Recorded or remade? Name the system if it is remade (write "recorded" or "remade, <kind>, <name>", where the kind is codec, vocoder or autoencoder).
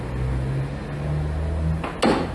recorded